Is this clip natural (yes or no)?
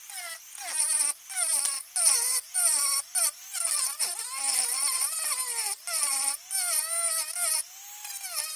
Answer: yes